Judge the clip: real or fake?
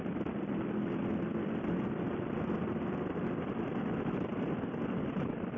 fake